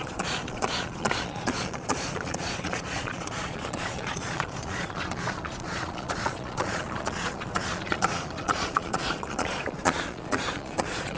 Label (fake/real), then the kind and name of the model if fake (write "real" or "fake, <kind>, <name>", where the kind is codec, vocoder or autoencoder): fake, vocoder, Vocos